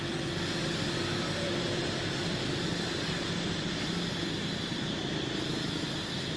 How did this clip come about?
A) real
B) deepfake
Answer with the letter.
A